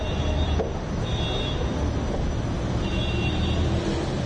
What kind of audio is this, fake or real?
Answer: real